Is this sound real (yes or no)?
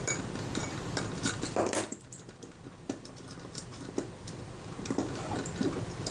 yes